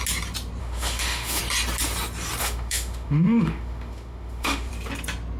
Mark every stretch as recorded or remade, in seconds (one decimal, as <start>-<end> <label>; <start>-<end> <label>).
0.0-0.6 recorded; 0.6-1.4 remade; 1.4-2.4 recorded; 2.4-4.7 remade; 4.7-5.4 recorded